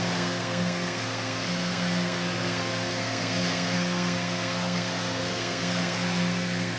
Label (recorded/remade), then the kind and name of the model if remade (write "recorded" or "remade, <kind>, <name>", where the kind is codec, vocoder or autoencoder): remade, codec, SNAC